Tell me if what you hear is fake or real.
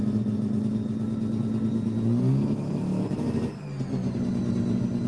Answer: real